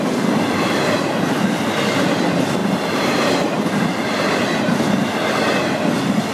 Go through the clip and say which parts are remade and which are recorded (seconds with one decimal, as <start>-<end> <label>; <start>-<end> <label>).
0.0-2.6 recorded; 2.6-3.7 remade; 3.7-6.3 recorded